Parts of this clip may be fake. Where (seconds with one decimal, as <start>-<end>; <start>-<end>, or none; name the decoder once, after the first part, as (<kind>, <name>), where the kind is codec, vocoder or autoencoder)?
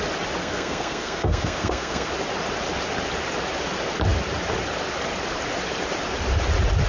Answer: 0.4-2.1 (codec, SNAC)